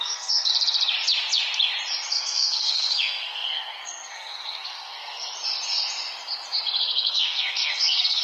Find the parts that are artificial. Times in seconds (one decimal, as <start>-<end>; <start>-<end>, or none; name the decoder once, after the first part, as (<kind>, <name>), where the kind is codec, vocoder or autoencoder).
0.0-0.5 (codec, SNAC); 2.1-5.3; 6.8-8.2